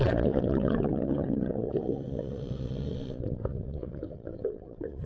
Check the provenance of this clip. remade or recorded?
remade